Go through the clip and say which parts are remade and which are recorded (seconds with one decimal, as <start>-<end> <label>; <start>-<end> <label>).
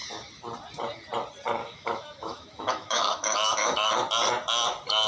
0.0-1.6 recorded; 1.6-3.9 remade; 3.9-5.1 recorded